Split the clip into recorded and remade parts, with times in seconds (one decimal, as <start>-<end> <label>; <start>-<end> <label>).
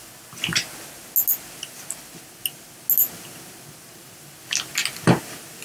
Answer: 0.0-5.6 recorded